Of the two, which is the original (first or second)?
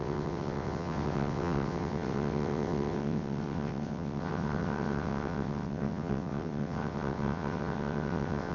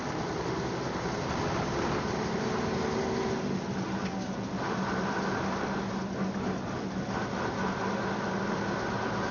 second